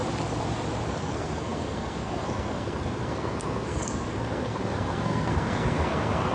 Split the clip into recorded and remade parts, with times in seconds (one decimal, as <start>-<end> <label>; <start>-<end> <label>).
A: 0.0-0.9 recorded; 0.9-6.3 remade